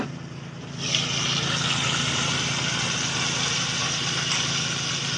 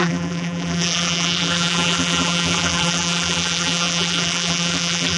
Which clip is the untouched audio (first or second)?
first